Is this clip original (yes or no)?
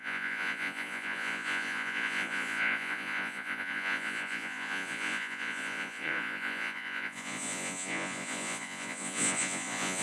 no